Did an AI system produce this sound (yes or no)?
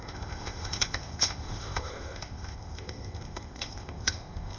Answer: yes